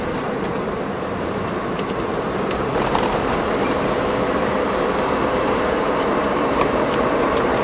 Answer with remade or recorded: remade